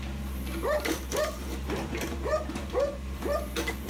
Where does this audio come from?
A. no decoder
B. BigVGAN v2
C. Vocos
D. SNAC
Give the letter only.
B